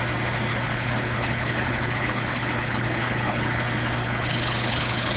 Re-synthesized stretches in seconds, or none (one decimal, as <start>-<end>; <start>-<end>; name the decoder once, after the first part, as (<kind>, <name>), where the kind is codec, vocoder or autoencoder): 0.5-3.6 (codec, HILCodec); 4.0-5.2